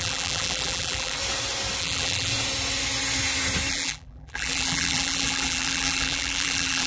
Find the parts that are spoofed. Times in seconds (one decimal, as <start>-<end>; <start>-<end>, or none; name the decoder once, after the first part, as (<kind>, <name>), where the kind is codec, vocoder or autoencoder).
0.0-1.2 (vocoder, BigVGAN v2); 1.8-2.3; 3.7-6.9